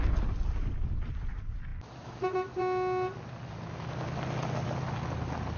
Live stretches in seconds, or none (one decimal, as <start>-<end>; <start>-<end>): 0.0-5.6